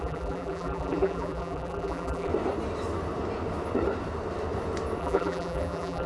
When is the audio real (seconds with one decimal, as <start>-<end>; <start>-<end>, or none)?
2.3-5.0